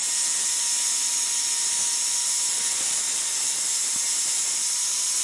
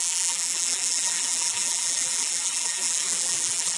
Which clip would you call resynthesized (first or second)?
second